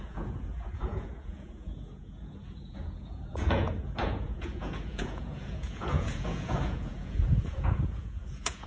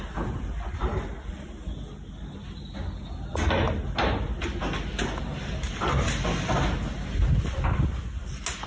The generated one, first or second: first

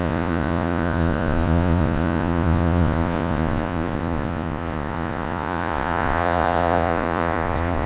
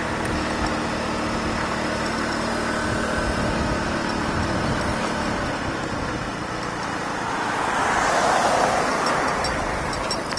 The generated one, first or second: first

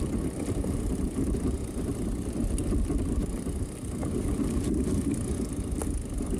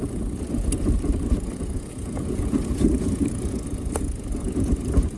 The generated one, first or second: second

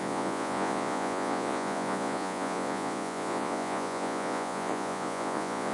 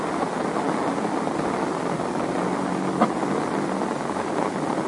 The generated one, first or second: first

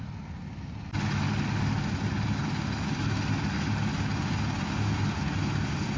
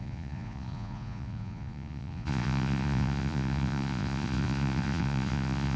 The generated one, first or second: second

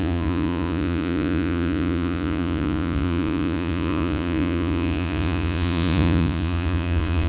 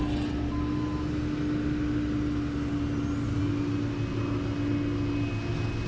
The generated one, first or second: first